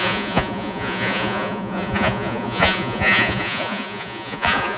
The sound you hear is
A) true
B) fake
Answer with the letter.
B